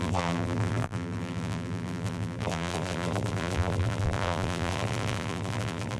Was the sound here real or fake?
fake